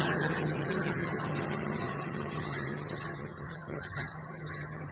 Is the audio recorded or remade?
remade